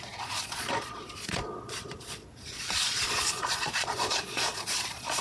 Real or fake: fake